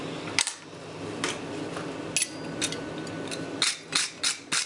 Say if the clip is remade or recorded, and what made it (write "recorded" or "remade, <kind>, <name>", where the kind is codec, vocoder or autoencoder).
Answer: recorded